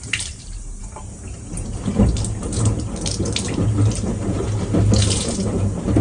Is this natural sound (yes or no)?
no